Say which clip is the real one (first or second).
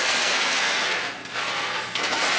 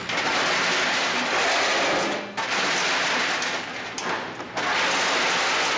second